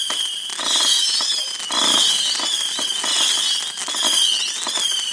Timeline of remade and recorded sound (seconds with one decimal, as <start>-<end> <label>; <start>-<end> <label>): 0.0-5.1 recorded